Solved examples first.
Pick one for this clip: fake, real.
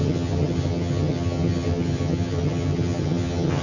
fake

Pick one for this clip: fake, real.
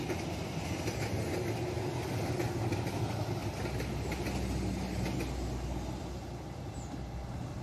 real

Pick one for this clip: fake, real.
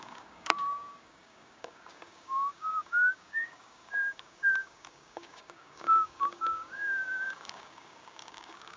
fake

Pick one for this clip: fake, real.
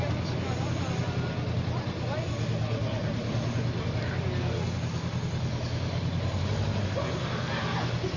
real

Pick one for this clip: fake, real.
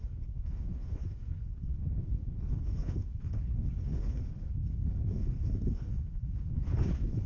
fake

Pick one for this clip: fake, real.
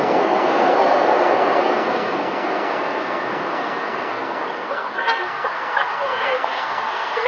fake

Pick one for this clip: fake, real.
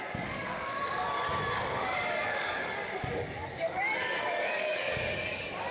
fake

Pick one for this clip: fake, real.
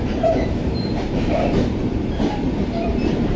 fake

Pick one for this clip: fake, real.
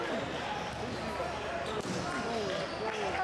real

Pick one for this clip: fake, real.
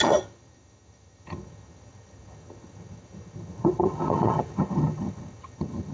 fake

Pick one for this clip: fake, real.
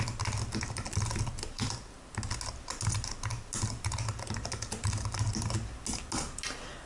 real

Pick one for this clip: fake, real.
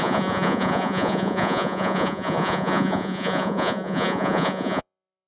fake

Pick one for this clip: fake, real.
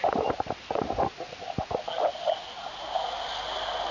real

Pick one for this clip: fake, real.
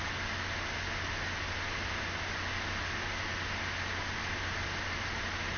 real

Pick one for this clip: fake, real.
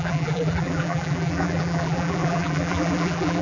fake